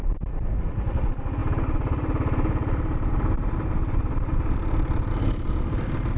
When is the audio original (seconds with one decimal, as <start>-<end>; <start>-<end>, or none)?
0.0-6.2